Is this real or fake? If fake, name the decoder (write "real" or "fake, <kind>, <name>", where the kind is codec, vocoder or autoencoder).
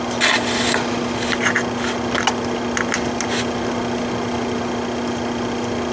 real